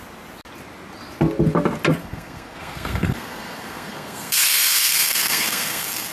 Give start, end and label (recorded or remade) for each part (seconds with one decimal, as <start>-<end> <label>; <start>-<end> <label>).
0.0-2.0 recorded; 2.0-6.1 remade